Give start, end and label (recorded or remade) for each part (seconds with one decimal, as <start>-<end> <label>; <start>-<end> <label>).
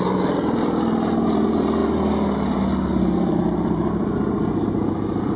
0.0-5.4 remade